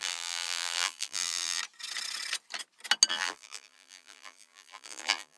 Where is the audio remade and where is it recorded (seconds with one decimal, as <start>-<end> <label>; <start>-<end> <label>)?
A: 0.0-1.6 remade; 1.6-3.1 recorded; 3.1-5.4 remade